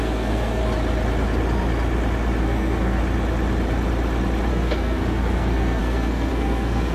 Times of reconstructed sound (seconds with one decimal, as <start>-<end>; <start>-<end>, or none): 0.0-0.6; 2.4-3.0; 4.5-6.9